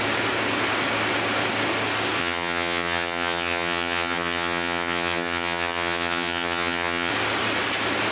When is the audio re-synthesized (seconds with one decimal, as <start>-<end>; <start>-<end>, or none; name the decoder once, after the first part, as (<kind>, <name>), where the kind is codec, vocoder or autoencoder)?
2.2-7.1 (vocoder, HiFi-GAN)